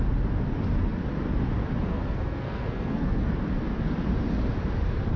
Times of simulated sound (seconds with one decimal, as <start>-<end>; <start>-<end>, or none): 1.9-3.3